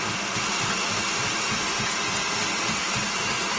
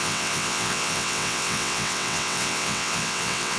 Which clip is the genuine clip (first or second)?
first